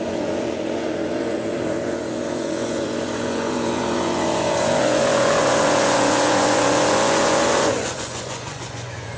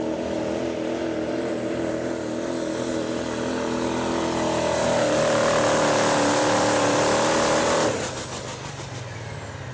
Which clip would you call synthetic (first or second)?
first